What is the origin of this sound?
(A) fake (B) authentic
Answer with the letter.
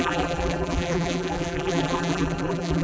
A